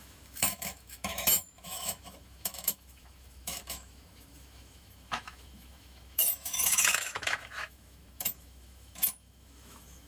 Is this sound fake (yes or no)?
yes